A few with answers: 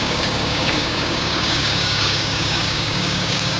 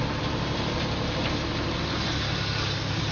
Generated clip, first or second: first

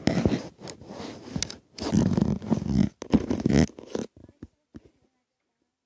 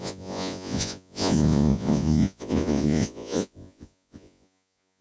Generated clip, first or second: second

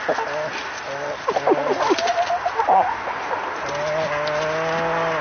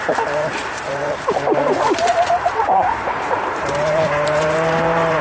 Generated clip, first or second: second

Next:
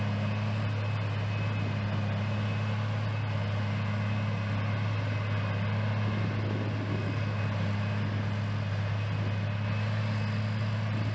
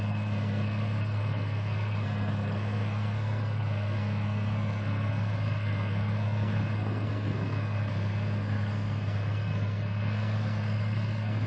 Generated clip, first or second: second